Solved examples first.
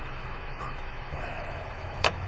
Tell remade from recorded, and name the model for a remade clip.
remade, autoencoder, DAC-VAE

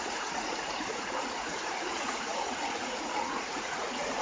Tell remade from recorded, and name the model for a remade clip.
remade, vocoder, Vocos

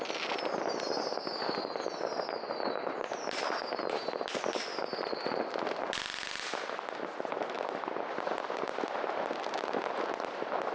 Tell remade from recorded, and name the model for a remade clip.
recorded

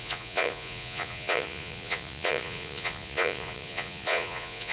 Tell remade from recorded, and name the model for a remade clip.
remade, vocoder, Vocos